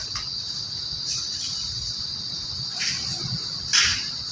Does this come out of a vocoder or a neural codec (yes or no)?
no